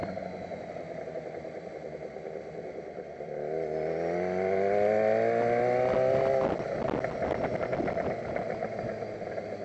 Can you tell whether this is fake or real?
real